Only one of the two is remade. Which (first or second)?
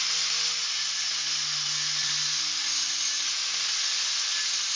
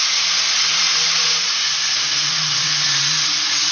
second